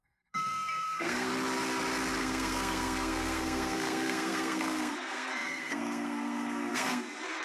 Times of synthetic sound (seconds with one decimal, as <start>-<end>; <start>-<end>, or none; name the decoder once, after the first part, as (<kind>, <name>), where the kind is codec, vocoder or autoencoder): 0.0-1.3 (codec, SNAC); 2.2-7.4